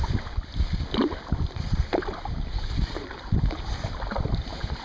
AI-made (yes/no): no